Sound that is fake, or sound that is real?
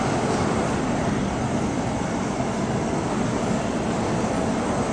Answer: fake